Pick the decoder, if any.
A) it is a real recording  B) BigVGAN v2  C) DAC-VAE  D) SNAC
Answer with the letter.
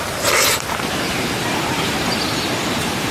B